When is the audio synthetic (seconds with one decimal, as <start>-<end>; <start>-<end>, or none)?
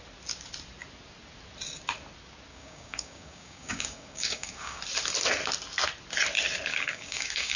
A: 2.5-4.8; 6.7-7.6